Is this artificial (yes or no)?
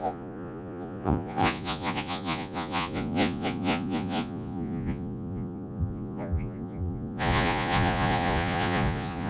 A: yes